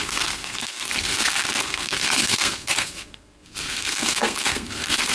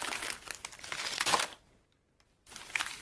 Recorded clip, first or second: second